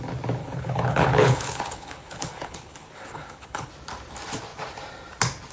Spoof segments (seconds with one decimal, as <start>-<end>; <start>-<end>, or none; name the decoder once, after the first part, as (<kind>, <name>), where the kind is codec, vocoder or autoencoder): 0.4-3.7 (codec, HILCodec)